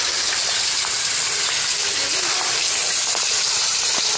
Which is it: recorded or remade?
recorded